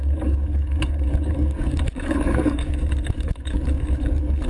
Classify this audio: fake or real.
fake